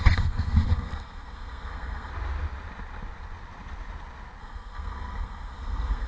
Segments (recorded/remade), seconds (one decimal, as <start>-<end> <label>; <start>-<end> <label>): 0.0-2.1 remade; 2.1-4.4 recorded; 4.4-6.1 remade

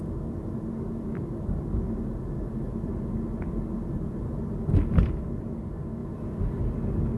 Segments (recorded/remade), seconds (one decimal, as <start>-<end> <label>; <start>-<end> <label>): 0.0-7.2 recorded